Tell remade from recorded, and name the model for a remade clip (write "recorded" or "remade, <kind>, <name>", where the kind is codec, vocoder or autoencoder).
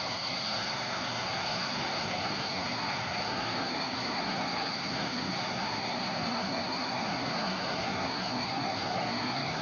remade, codec, SNAC